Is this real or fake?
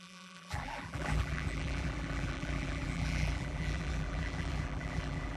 fake